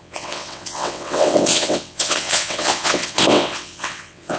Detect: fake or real fake